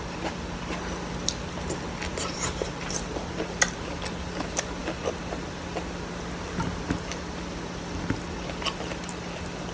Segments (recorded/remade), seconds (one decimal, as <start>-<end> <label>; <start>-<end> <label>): 0.0-2.1 recorded; 2.1-3.2 remade; 3.2-9.7 recorded